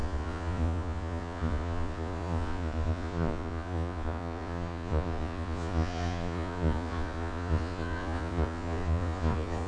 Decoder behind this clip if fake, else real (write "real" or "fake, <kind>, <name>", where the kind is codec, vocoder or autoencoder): fake, vocoder, Vocos